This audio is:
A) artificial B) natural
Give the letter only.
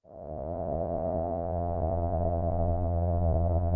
A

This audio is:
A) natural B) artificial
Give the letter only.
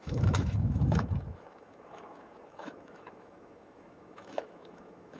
B